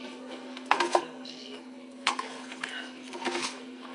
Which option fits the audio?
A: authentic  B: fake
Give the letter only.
B